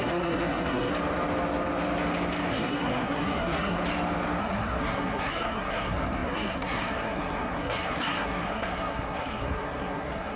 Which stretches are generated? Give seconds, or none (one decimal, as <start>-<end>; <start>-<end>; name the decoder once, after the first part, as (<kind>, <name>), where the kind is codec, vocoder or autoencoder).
0.0-0.9 (codec, SNAC); 2.5-3.8; 4.4-10.4